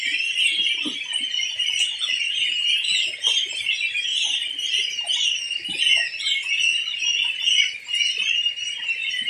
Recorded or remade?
recorded